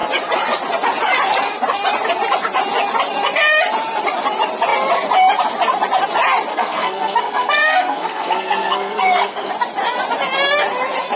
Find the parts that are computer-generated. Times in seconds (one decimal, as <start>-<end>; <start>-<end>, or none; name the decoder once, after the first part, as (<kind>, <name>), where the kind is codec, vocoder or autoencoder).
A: 6.5-9.5 (codec, SNAC)